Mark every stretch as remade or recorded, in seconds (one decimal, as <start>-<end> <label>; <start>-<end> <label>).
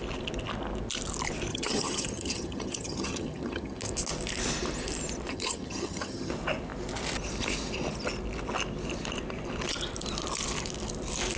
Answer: 0.0-1.5 recorded; 1.5-3.8 remade; 3.8-5.3 recorded; 5.3-6.3 remade; 6.3-11.4 recorded